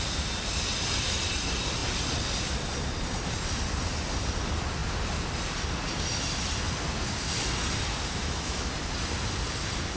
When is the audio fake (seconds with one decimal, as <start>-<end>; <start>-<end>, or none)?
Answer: 8.2-8.7